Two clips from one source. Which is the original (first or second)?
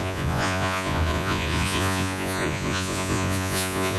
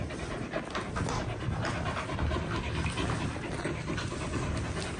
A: second